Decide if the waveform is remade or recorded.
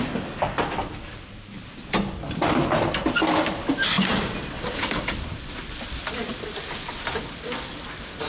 recorded